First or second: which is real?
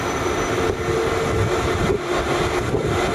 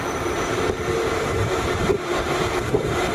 first